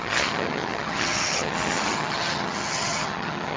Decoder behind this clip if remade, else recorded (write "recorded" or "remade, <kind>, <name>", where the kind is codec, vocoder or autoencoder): remade, vocoder, HiFi-GAN